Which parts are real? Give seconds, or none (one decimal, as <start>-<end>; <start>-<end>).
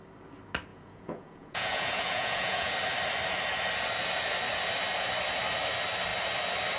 0.0-0.7; 2.7-6.8